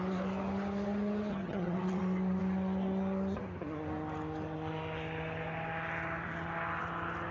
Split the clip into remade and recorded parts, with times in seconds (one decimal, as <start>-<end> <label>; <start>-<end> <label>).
0.0-1.3 recorded; 1.3-2.0 remade; 2.0-7.3 recorded

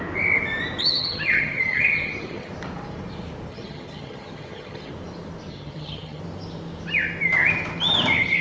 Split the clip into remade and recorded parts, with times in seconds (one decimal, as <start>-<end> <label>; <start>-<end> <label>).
0.0-0.8 recorded; 0.8-2.5 remade; 2.5-3.5 recorded; 3.5-4.9 remade; 4.9-5.5 recorded; 5.5-6.2 remade; 6.2-8.4 recorded

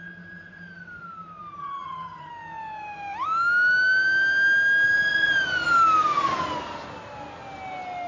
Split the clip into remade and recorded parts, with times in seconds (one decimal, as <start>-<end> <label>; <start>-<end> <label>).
0.0-1.6 recorded; 1.6-2.3 remade; 2.3-8.1 recorded

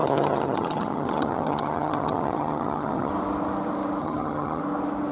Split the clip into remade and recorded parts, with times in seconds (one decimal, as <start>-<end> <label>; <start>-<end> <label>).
0.0-3.1 remade; 3.1-4.0 recorded; 4.0-4.6 remade; 4.6-5.1 recorded

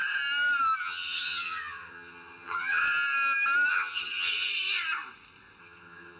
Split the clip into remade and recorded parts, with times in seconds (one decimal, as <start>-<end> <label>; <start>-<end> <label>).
0.0-0.8 recorded; 0.8-2.8 remade; 2.8-3.7 recorded; 3.7-4.5 remade; 4.5-5.6 recorded; 5.6-6.2 remade